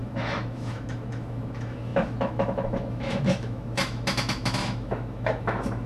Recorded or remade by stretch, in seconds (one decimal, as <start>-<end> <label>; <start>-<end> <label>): 0.0-5.9 remade